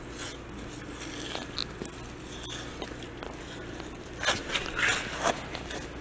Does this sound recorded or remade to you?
recorded